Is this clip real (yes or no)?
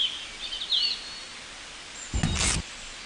yes